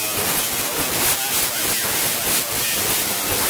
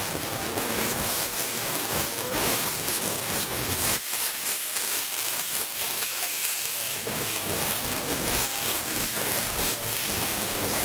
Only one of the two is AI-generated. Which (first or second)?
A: second